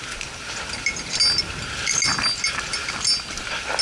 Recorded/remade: recorded